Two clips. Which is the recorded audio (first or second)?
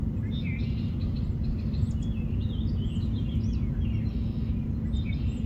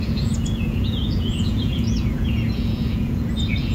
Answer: first